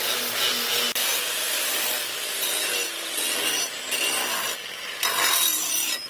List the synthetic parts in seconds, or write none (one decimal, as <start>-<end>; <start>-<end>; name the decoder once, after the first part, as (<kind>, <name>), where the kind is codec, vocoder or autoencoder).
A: 1.0-4.7 (vocoder, BigVGAN v2); 5.5-6.1